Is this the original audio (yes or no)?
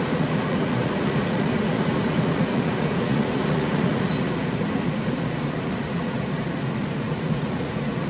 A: no